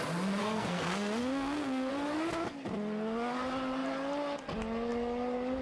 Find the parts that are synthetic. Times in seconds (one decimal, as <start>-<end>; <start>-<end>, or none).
0.4-1.9